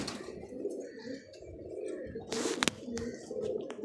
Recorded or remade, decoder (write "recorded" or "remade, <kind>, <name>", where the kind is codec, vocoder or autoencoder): recorded